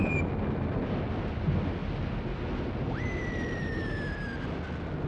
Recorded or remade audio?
recorded